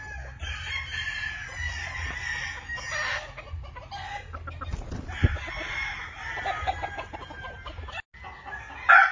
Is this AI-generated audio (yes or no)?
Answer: no